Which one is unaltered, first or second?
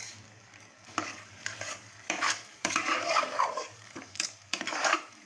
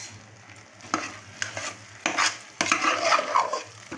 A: second